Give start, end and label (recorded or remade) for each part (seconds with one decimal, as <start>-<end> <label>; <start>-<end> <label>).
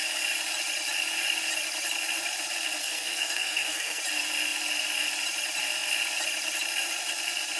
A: 0.0-2.8 recorded; 2.8-4.0 remade; 4.0-7.6 recorded